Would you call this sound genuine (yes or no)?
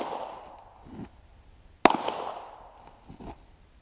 yes